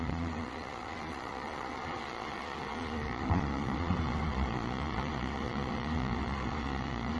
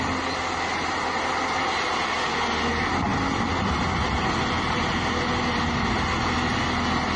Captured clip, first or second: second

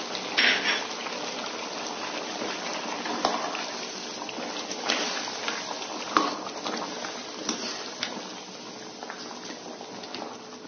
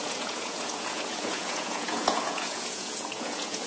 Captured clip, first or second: first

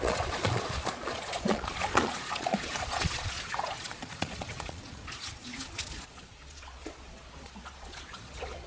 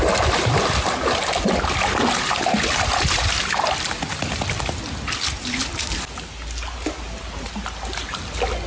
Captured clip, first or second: second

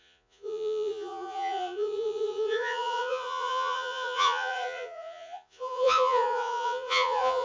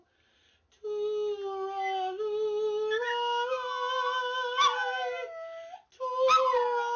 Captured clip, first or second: second